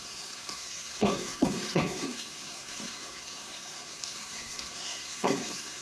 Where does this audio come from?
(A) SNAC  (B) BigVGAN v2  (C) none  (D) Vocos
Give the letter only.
A